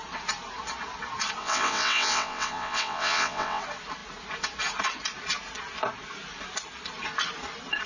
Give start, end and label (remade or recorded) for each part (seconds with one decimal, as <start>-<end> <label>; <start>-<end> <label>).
0.0-1.4 recorded; 1.4-3.6 remade; 3.6-7.9 recorded